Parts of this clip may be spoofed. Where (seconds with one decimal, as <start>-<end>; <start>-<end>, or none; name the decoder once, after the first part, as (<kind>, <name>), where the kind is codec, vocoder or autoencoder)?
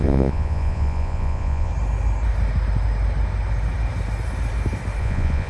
0.0-1.7 (vocoder, Vocos); 5.0-5.5